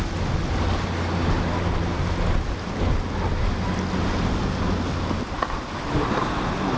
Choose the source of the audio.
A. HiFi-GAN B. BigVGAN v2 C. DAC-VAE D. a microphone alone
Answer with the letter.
D